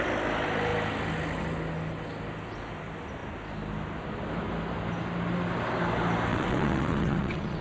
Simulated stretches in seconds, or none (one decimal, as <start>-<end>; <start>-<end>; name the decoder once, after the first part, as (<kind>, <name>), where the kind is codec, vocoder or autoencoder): 6.3-7.6 (vocoder, WaveNeXt)